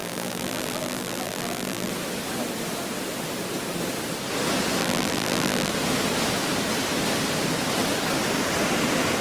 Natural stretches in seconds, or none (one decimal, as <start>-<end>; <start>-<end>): 1.9-4.8; 5.7-9.2